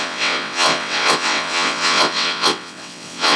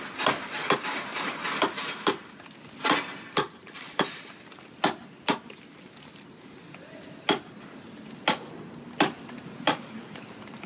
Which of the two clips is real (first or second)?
second